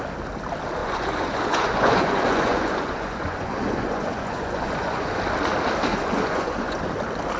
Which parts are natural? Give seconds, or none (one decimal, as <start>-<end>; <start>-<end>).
0.0-0.8; 5.2-5.9; 6.8-7.4